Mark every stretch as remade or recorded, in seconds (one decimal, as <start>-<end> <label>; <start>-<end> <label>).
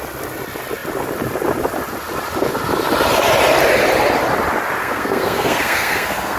0.0-4.8 recorded; 4.8-6.4 remade